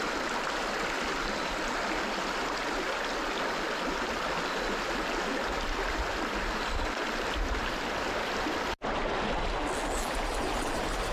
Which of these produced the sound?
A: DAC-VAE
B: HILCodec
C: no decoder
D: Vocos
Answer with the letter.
C